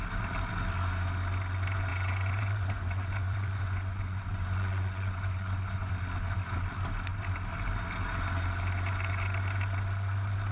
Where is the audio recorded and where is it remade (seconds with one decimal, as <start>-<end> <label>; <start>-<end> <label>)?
0.0-1.9 recorded; 1.9-5.9 remade; 5.9-10.5 recorded